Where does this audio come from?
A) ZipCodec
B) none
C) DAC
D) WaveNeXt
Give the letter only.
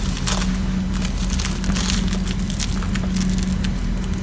B